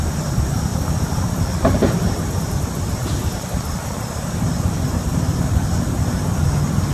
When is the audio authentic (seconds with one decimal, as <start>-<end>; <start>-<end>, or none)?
0.0-6.9